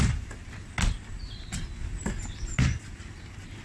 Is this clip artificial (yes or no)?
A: no